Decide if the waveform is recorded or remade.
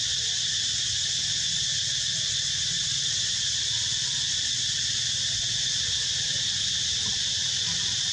recorded